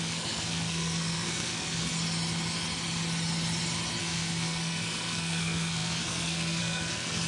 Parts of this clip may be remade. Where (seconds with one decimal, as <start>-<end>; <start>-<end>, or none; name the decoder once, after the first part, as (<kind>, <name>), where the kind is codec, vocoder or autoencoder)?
0.0-1.9 (codec, SNAC); 4.0-7.3